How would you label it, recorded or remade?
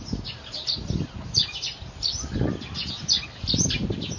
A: recorded